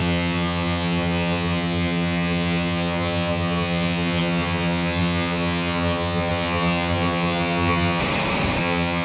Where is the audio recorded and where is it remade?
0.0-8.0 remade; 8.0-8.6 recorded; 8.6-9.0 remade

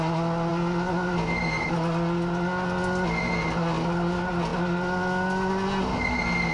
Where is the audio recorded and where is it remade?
0.0-6.5 recorded

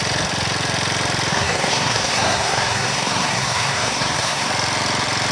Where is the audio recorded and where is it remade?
0.0-1.3 recorded; 1.3-4.5 remade; 4.5-5.3 recorded

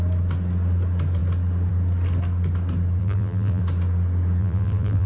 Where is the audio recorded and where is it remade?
0.0-3.0 recorded; 3.0-3.6 remade; 3.6-4.4 recorded; 4.4-5.1 remade

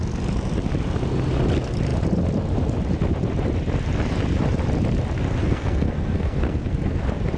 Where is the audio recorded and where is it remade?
0.0-5.4 recorded; 5.4-7.0 remade; 7.0-7.4 recorded

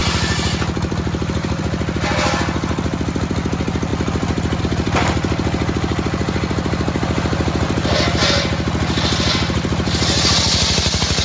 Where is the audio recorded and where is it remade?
0.0-11.2 recorded